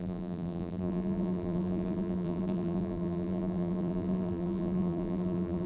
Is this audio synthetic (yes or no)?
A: yes